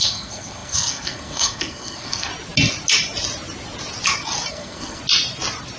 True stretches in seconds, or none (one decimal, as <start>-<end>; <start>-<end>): 2.3-4.5; 5.0-5.8